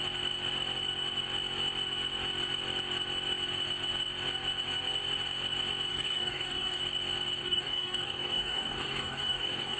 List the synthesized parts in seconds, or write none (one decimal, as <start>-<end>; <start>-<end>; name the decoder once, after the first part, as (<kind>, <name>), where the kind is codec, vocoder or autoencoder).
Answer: 5.9-6.8 (codec, DAC); 7.4-9.8